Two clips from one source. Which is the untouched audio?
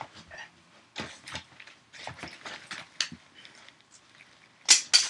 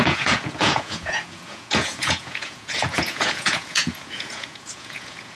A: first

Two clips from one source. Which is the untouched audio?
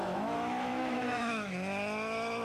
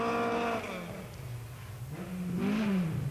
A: second